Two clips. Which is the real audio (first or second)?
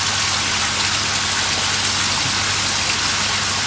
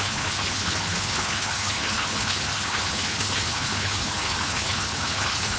first